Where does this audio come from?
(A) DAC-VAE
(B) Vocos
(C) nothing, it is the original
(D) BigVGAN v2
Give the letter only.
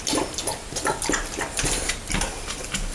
C